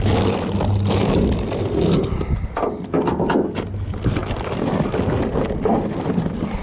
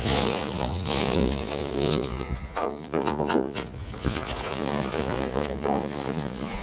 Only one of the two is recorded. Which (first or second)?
first